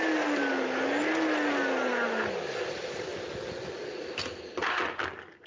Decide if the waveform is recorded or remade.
recorded